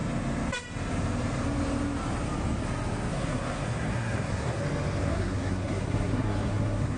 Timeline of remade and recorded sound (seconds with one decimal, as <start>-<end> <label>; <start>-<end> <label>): 0.0-3.1 recorded; 3.1-4.6 remade; 4.6-5.0 recorded; 5.0-7.0 remade